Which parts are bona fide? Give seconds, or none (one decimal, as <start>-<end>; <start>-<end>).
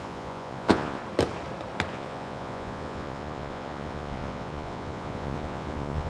1.0-1.9